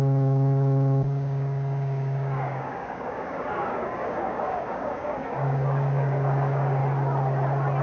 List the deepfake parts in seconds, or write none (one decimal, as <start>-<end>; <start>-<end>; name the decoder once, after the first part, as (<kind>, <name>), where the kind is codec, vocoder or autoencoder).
0.0-6.8 (codec, DAC)